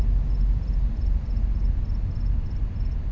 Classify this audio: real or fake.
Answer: real